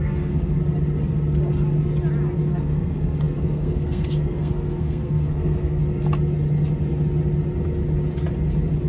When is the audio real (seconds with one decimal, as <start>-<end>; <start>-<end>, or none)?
0.6-2.5; 5.8-8.9